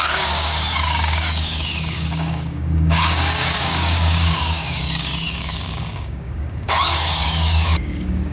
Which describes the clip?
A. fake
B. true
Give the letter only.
A